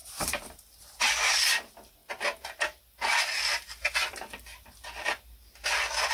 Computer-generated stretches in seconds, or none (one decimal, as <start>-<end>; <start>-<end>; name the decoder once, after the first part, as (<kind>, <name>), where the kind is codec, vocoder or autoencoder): 0.0-1.0 (vocoder, BigVGAN v2)

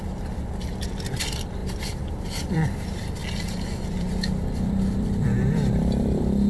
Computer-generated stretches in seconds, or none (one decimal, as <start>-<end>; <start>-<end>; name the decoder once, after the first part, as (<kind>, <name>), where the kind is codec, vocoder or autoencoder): 0.0-6.5 (vocoder, BigVGAN v2)

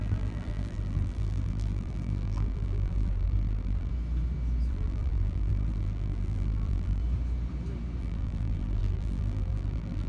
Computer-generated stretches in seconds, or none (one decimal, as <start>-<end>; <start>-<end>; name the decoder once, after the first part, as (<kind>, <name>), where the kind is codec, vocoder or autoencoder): 0.0-3.9 (vocoder, BigVGAN v2); 4.7-7.0; 8.0-10.1

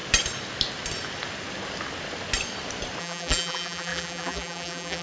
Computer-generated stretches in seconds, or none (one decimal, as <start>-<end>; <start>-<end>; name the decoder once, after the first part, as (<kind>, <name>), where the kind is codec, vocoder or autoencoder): 3.0-5.0 (vocoder, BigVGAN v2)

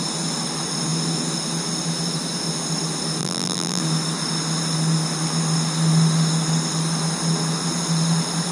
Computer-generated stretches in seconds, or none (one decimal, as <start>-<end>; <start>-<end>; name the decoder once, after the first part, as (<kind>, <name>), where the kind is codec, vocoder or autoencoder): 3.2-3.8 (vocoder, BigVGAN v2)

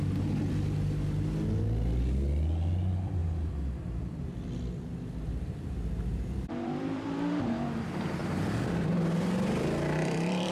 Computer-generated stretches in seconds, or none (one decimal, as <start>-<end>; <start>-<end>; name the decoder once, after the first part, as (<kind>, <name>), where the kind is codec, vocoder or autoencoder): 3.2-7.4 (vocoder, BigVGAN v2); 8.2-10.5